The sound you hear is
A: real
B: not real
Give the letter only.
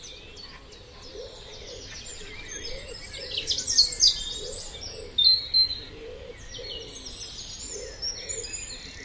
A